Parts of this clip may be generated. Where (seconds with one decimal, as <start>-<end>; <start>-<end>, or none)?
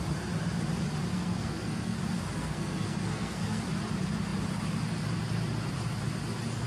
1.1-2.0; 2.4-3.6